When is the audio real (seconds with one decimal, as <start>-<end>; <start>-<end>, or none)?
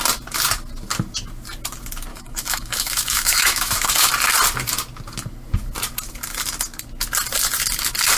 0.0-2.1; 4.1-8.2